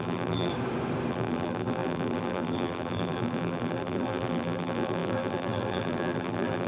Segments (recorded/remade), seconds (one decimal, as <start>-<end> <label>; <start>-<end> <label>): 0.0-0.5 remade; 0.5-1.1 recorded; 1.1-6.7 remade